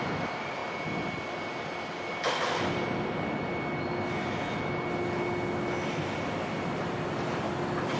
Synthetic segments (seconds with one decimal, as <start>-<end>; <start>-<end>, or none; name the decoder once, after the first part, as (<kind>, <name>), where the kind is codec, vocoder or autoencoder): 0.0-0.6 (vocoder, BigVGAN v2); 1.9-2.8; 7.1-8.0